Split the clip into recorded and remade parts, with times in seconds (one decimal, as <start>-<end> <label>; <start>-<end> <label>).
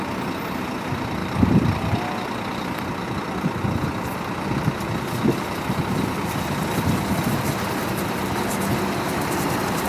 0.0-1.2 recorded; 1.2-2.0 remade; 2.0-9.9 recorded